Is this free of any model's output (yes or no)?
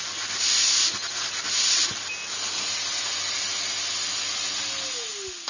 yes